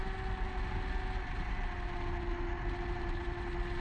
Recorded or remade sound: recorded